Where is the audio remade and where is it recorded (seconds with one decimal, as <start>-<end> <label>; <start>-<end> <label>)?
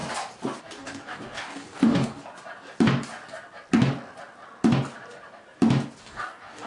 0.0-0.6 recorded; 0.6-2.2 remade; 2.2-6.0 recorded; 6.0-6.7 remade